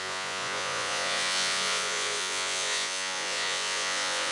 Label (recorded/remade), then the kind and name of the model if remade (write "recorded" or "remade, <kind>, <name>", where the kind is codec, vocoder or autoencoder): remade, vocoder, Vocos